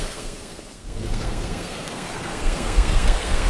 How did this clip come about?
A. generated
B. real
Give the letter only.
A